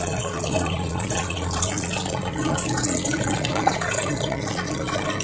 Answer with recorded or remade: remade